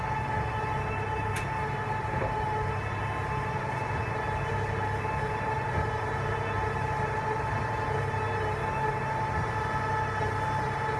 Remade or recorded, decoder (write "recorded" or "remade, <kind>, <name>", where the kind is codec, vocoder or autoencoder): recorded